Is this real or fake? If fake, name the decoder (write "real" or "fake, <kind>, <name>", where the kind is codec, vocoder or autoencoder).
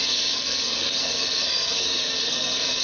fake, codec, SNAC